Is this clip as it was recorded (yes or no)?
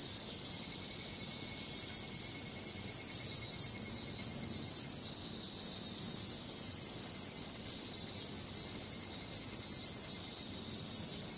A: yes